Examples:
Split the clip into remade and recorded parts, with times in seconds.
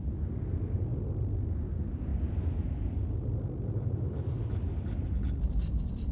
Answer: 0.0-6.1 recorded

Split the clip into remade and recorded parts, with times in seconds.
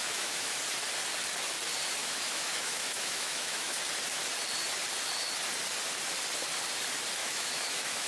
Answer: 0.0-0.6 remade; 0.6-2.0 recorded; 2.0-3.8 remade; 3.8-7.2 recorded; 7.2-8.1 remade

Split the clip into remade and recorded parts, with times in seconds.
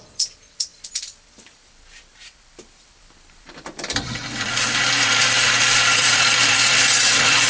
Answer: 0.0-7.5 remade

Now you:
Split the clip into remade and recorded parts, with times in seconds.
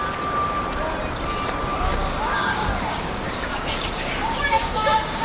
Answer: 0.0-1.9 recorded; 1.9-5.2 remade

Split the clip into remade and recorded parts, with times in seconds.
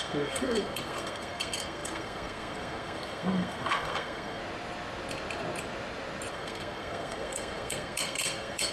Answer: 0.0-4.4 remade; 4.4-6.3 recorded; 6.3-8.7 remade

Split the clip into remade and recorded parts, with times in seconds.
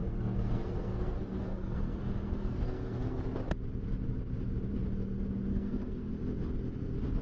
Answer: 0.0-3.2 remade; 3.2-5.5 recorded; 5.5-6.1 remade; 6.1-7.2 recorded